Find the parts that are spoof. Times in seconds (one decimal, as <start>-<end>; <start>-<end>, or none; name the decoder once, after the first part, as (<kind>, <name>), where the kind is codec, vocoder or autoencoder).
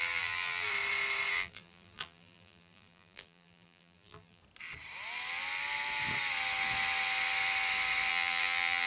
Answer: 0.0-0.7 (vocoder, BigVGAN v2); 1.3-4.4; 8.1-8.9